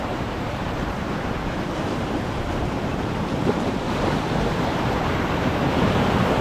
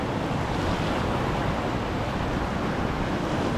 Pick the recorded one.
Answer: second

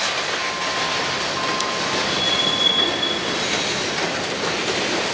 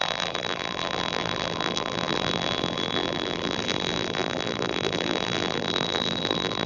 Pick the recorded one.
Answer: first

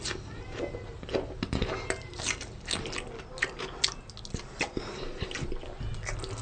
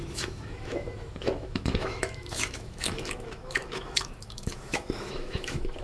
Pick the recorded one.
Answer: first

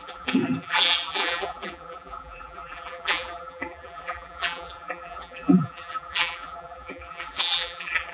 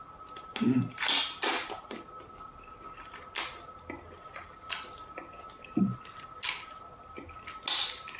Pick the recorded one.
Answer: second